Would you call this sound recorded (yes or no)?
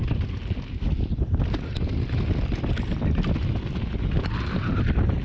yes